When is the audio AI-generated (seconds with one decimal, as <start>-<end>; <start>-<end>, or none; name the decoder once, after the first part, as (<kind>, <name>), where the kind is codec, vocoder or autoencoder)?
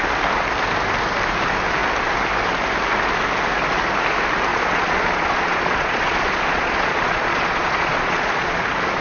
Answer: 4.5-8.6 (vocoder, Vocos)